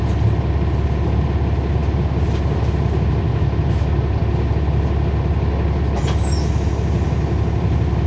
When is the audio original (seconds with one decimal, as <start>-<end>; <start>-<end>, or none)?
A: 0.0-8.1